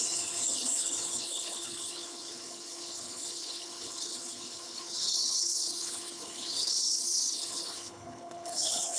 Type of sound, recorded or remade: remade